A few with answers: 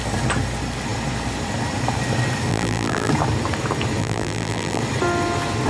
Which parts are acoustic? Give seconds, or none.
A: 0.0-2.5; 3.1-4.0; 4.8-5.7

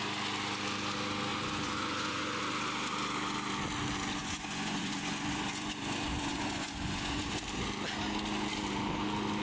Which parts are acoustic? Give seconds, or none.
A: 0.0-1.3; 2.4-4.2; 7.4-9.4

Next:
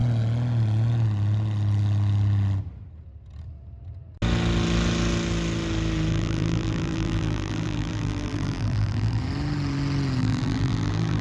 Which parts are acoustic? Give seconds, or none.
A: 0.0-6.1; 9.2-10.2